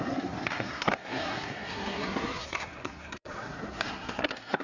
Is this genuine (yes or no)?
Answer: no